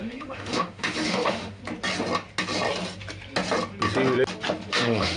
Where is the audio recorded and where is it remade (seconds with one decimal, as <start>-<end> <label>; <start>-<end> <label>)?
0.0-1.6 remade; 1.6-4.7 recorded; 4.7-5.2 remade